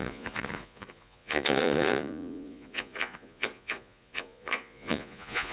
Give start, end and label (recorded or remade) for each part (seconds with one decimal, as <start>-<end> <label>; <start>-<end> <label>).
0.0-5.5 remade

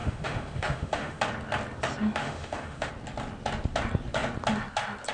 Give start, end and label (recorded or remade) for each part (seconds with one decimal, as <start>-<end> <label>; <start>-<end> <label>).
0.0-1.2 remade; 1.2-2.2 recorded; 2.2-2.9 remade; 2.9-5.1 recorded

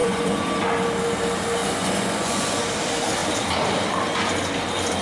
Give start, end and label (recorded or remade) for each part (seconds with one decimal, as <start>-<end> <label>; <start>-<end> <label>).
0.0-0.5 remade; 0.5-1.6 recorded; 1.6-2.6 remade; 2.6-5.0 recorded

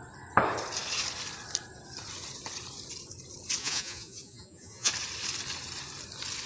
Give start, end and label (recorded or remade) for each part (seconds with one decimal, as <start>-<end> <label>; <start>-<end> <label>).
0.0-3.6 recorded; 3.6-4.9 remade; 4.9-6.5 recorded

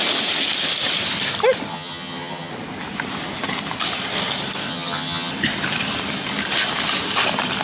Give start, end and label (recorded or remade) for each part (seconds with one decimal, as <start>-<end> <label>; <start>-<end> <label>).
0.0-1.7 recorded; 1.7-2.5 remade; 2.5-4.7 recorded; 4.7-5.3 remade; 5.3-7.6 recorded

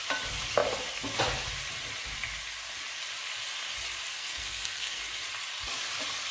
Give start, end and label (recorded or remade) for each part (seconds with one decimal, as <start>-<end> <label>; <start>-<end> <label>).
0.0-4.1 recorded; 4.1-5.0 remade; 5.0-6.3 recorded

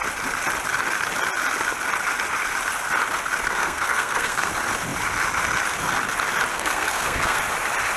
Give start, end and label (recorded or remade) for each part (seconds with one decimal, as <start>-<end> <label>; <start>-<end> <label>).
0.0-3.6 recorded; 3.6-4.5 remade; 4.5-6.5 recorded; 6.5-7.4 remade; 7.4-8.0 recorded

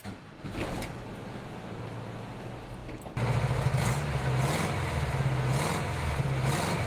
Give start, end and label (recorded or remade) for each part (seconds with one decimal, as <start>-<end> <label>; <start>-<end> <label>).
0.0-1.2 recorded; 1.2-1.8 remade; 1.8-6.9 recorded